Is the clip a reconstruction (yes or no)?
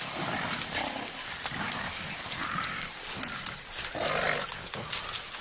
no